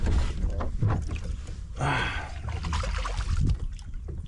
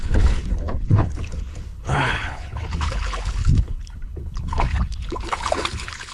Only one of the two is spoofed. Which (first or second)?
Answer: second